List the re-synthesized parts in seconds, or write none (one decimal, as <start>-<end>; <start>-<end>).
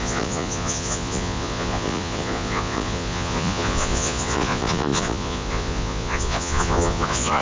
0.0-7.4